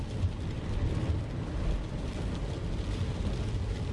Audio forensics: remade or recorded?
recorded